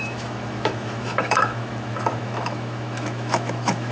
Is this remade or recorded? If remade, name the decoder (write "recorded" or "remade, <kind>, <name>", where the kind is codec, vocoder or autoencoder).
remade, autoencoder, DAC-VAE